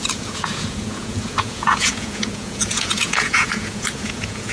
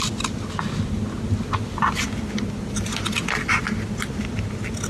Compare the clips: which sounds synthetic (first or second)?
first